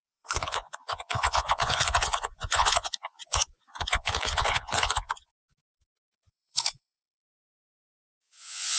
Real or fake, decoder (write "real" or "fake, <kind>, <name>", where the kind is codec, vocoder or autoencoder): fake, vocoder, Vocos